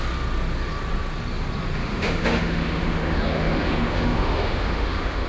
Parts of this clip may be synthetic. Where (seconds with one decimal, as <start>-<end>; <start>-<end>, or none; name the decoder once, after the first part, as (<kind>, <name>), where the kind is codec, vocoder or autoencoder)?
1.8-5.3 (autoencoder, DAC-VAE)